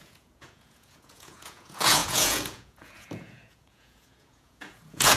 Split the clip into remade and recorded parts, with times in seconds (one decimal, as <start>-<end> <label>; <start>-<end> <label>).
0.0-5.2 remade